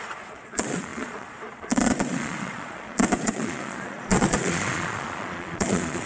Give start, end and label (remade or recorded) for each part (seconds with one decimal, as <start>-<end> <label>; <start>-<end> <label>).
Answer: 0.0-6.1 remade